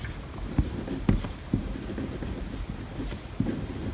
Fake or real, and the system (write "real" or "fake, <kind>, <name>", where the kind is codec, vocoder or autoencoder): real